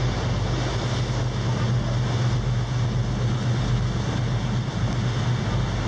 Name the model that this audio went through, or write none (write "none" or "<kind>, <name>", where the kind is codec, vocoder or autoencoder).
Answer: none